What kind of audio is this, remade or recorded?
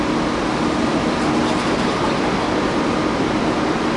recorded